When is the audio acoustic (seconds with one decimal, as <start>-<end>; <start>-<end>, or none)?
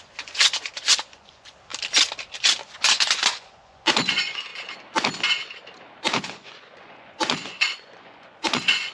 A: 1.7-2.6; 4.5-6.0